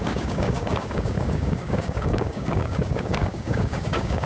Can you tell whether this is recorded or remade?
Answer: remade